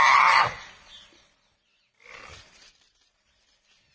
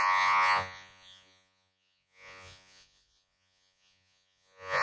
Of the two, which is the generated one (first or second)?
second